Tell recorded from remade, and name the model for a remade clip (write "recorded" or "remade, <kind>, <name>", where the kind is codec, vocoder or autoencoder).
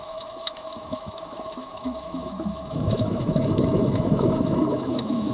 remade, autoencoder, DAC-VAE